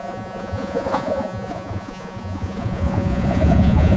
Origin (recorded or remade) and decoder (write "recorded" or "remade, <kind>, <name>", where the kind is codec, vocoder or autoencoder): remade, vocoder, Vocos